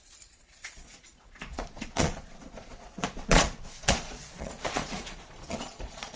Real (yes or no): no